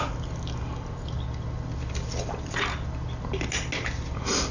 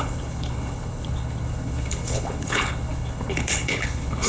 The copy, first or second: second